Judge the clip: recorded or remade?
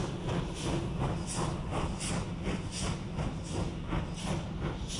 recorded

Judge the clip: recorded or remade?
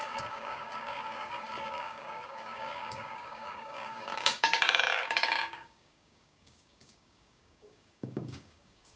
remade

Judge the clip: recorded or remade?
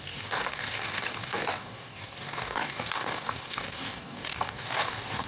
remade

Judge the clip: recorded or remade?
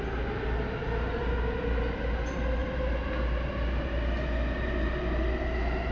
recorded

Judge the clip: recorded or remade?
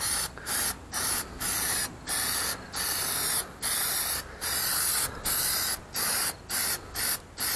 recorded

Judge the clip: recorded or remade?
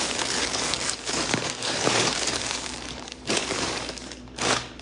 remade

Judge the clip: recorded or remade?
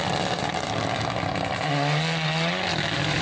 recorded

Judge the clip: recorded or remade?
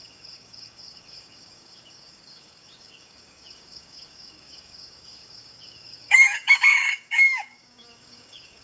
remade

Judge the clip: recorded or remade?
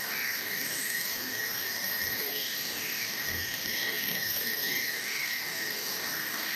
remade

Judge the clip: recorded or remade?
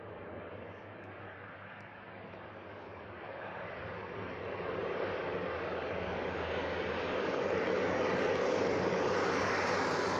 remade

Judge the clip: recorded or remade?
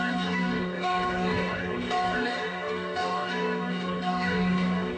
remade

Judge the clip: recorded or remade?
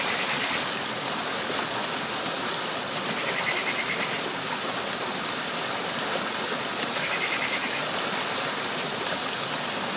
recorded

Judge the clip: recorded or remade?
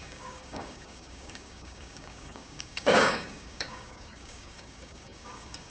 remade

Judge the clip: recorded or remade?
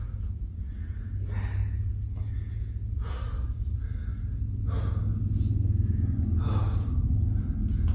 recorded